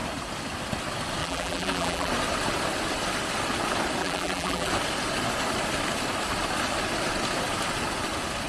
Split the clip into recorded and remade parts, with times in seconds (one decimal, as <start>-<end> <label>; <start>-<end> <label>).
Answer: 0.0-1.2 recorded; 1.2-2.1 remade; 2.1-4.0 recorded; 4.0-4.7 remade; 4.7-8.5 recorded